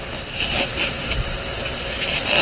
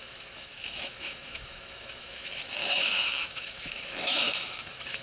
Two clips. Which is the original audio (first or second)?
first